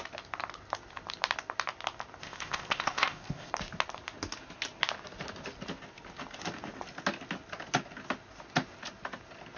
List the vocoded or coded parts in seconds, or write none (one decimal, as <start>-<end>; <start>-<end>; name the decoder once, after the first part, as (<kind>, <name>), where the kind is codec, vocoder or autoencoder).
2.2-3.5 (codec, ZipCodec)